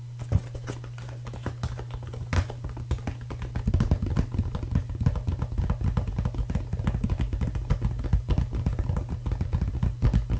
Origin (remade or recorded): recorded